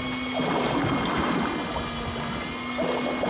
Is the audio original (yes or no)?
yes